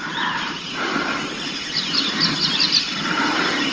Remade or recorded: recorded